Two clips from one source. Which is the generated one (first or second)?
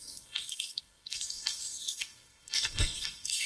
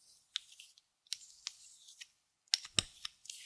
first